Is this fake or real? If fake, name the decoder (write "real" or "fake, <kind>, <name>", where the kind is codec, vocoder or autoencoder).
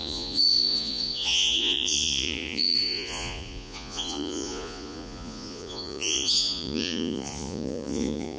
fake, vocoder, Vocos